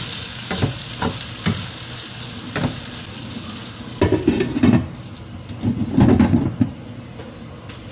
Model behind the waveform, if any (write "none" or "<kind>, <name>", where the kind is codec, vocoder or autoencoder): none